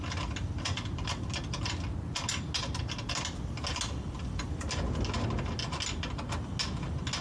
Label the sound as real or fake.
real